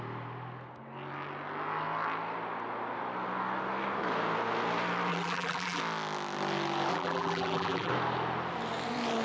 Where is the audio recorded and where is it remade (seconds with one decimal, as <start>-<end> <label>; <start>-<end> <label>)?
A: 0.0-5.1 recorded; 5.1-5.8 remade; 5.8-6.9 recorded; 6.9-7.9 remade; 7.9-9.2 recorded